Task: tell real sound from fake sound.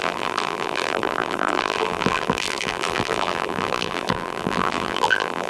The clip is fake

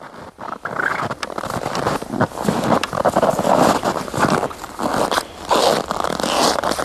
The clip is real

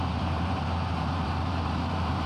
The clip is fake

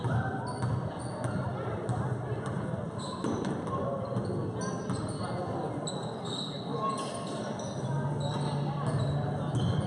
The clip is real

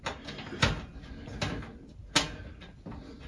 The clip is real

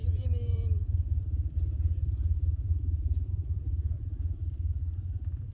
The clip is fake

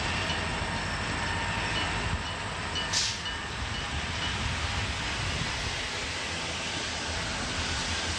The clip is real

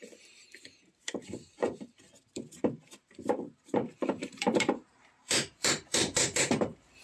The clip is fake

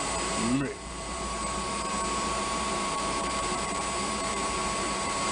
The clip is fake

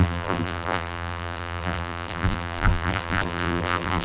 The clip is fake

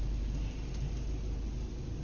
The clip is real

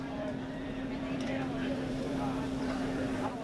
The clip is fake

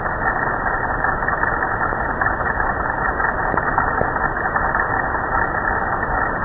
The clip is real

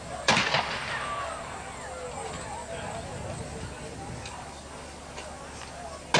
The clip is real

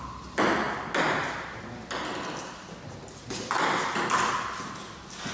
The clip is real